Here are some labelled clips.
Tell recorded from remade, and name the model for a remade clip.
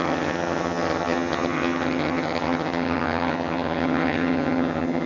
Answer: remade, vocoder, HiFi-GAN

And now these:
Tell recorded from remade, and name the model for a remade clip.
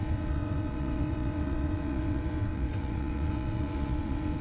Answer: remade, vocoder, WaveNeXt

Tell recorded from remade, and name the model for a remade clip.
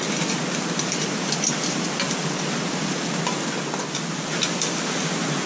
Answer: recorded